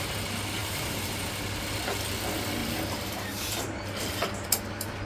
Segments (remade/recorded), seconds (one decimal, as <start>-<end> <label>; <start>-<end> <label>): 0.0-0.6 recorded; 0.6-1.3 remade; 1.3-2.6 recorded; 2.6-4.5 remade; 4.5-5.1 recorded